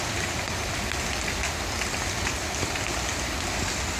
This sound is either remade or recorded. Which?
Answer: recorded